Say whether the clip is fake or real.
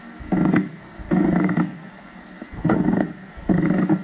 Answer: fake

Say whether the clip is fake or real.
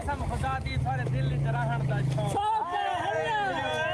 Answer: real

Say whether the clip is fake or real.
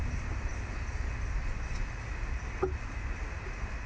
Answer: real